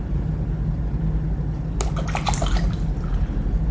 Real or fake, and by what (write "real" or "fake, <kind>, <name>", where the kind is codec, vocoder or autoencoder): real